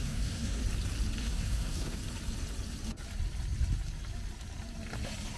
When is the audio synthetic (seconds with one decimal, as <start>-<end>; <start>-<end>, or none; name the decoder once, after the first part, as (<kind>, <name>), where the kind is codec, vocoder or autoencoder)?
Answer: 0.0-0.6 (codec, SNAC); 1.2-2.0